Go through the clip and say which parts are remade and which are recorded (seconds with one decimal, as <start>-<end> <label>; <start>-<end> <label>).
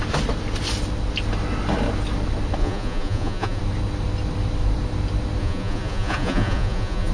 0.0-2.6 recorded; 2.6-3.6 remade; 3.6-5.4 recorded; 5.4-7.1 remade